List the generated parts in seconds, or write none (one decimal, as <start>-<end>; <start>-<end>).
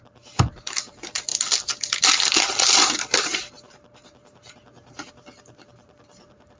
0.0-1.3; 2.6-6.6